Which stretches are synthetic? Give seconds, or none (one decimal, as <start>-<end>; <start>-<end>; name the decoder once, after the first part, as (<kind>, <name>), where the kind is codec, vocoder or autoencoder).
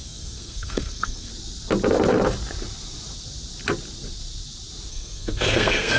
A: 0.0-1.3 (codec, SNAC); 4.9-6.0